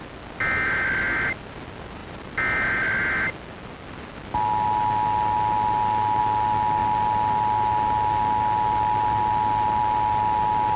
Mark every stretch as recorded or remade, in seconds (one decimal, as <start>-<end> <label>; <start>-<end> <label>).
0.0-10.8 recorded